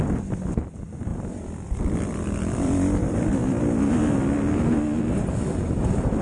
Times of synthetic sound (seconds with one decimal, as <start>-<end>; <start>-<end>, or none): 0.0-3.4; 5.0-6.2